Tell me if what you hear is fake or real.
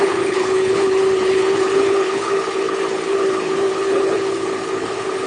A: fake